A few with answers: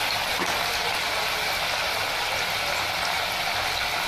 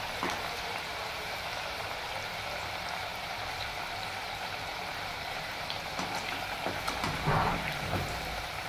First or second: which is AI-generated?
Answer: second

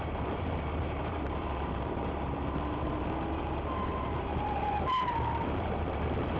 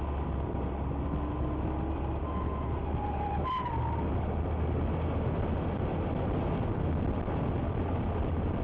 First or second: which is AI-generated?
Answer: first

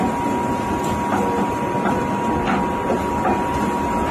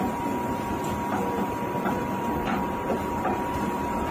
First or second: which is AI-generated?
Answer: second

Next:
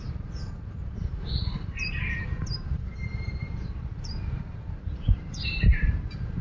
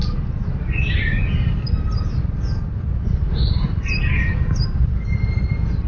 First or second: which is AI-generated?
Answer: first